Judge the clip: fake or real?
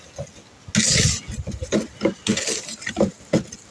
real